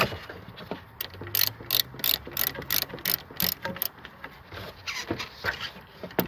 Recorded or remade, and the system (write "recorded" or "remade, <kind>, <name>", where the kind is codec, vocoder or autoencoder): recorded